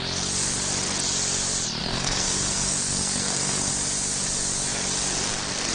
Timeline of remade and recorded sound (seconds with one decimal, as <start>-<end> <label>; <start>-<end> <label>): 0.0-1.8 recorded; 1.8-3.7 remade; 3.7-5.7 recorded